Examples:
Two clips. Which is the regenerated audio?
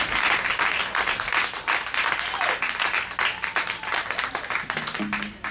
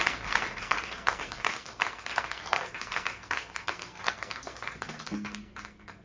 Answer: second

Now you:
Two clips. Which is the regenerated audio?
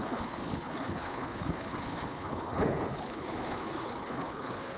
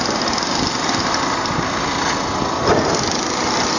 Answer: first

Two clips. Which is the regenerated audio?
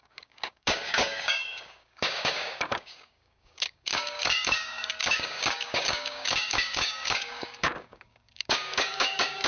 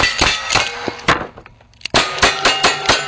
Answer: first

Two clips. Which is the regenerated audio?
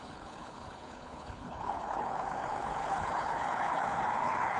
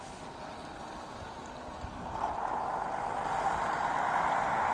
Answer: first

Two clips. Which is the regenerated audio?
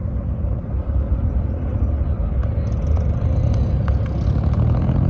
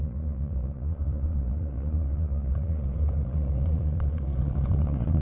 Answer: second